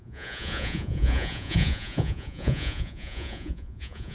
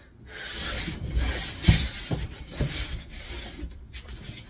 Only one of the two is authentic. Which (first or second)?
second